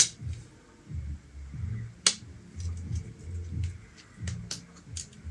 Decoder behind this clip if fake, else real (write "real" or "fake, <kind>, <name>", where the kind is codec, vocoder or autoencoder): real